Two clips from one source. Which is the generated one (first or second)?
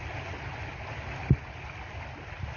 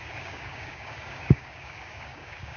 second